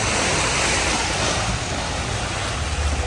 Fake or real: real